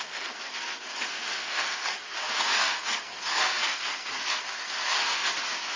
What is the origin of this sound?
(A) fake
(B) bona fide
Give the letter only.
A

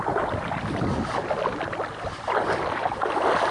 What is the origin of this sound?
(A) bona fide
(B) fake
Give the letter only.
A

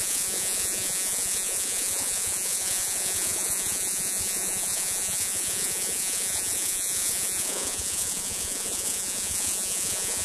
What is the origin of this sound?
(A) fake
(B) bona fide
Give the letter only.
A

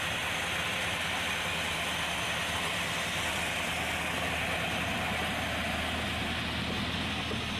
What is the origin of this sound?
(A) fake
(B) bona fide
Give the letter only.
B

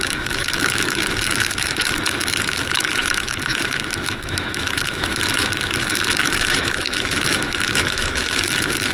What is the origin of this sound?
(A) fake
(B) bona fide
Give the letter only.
A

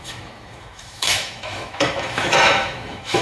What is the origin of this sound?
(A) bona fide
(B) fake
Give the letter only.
B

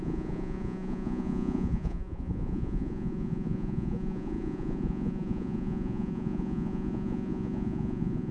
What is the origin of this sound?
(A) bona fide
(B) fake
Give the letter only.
B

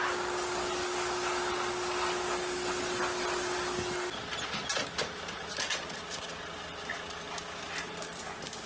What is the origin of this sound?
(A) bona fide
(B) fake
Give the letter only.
A